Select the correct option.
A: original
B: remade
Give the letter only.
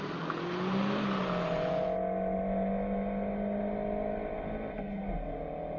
A